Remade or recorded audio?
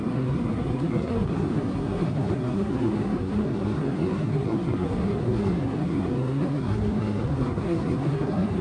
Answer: remade